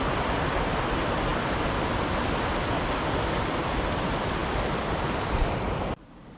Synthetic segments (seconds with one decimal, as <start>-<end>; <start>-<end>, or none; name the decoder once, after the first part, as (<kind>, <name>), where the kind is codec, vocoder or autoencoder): none